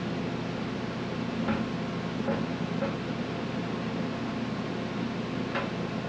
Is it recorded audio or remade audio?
recorded